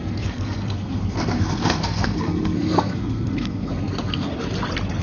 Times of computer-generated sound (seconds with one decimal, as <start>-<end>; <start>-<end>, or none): 0.0-4.3